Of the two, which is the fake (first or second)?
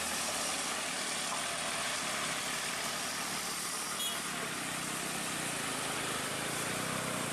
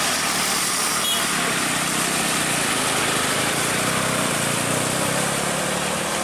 second